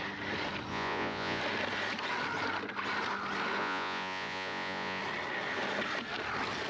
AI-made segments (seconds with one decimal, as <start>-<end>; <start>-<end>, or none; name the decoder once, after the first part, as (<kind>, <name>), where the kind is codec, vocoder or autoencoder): 0.7-1.4 (vocoder, Vocos); 3.6-5.0